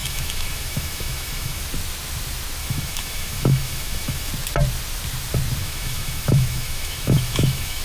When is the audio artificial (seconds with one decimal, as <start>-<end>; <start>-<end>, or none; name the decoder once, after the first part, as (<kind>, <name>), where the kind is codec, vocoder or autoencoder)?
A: 0.0-1.6 (autoencoder, DAC-VAE); 2.6-4.3; 5.6-7.8